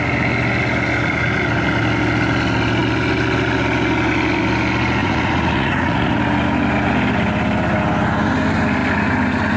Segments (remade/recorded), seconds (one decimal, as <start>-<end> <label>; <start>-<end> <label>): 0.0-5.0 recorded; 5.0-6.2 remade; 6.2-9.6 recorded